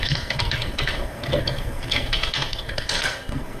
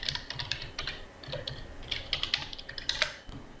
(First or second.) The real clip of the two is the second